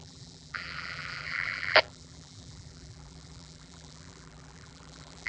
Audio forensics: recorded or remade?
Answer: remade